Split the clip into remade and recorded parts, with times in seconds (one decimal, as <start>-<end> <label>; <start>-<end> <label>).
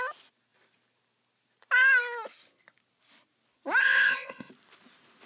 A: 0.0-3.8 recorded; 3.8-4.5 remade; 4.5-5.3 recorded